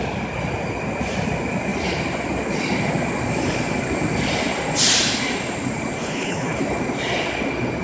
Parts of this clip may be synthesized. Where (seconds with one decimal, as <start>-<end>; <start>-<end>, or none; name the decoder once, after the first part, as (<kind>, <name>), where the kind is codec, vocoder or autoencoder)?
6.0-6.6 (codec, HILCodec)